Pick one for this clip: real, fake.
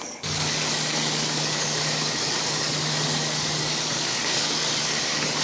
fake